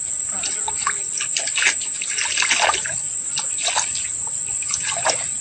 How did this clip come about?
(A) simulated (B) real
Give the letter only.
B